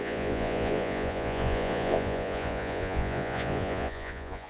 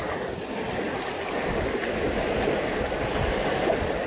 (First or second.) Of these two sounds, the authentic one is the second